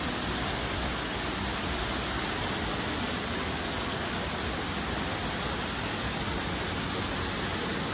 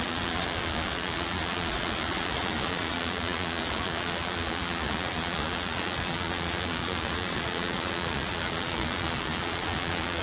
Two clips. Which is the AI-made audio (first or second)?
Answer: second